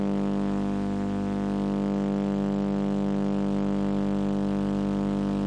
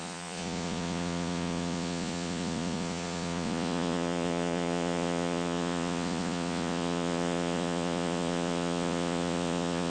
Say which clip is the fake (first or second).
second